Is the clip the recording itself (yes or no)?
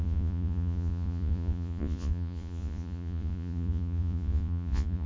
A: no